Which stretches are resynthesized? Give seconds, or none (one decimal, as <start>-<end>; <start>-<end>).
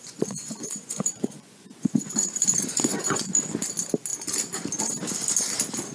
0.0-3.5